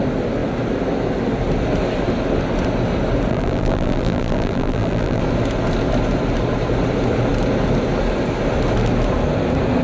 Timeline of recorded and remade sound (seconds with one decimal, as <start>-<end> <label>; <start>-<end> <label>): 0.0-3.3 recorded; 3.3-5.2 remade; 5.2-9.8 recorded